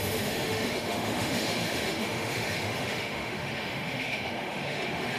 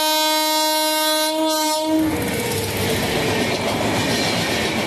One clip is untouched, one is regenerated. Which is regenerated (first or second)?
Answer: first